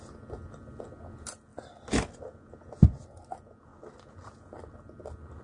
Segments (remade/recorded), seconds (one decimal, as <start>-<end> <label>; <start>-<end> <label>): 0.0-5.4 recorded